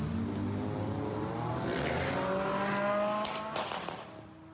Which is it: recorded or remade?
recorded